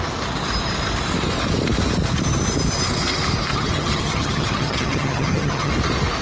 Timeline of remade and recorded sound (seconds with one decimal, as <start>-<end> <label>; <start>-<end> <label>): 0.0-3.5 recorded; 3.5-5.7 remade; 5.7-6.2 recorded